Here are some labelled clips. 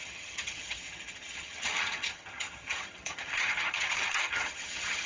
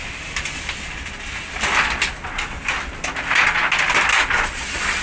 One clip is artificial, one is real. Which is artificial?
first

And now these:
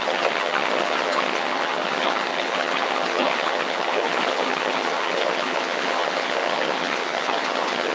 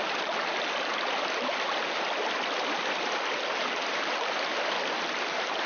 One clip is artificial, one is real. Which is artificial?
first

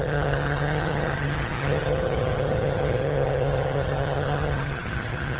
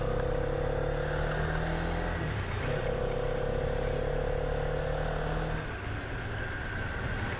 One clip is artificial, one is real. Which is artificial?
first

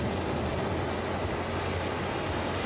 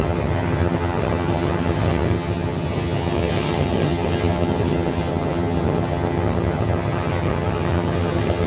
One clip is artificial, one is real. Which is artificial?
second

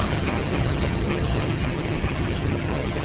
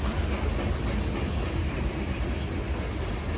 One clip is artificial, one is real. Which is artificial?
first